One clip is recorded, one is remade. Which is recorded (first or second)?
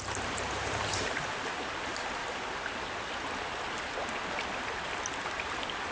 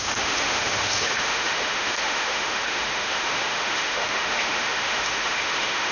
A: first